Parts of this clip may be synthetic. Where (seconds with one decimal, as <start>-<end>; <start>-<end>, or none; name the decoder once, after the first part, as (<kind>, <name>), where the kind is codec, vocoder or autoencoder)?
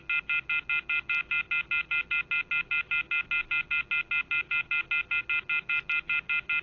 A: none